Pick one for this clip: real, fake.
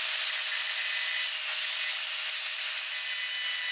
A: real